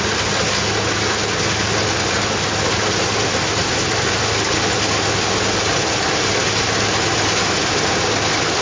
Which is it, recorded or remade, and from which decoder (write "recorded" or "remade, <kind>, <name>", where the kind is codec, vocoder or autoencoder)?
recorded